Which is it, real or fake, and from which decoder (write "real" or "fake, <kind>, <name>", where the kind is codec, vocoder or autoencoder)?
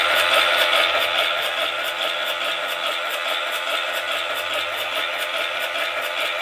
real